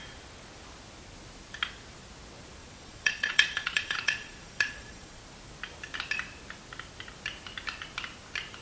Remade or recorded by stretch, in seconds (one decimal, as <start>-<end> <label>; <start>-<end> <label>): 0.0-2.6 recorded; 2.6-5.2 remade; 5.2-8.6 recorded